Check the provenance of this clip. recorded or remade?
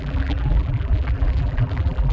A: remade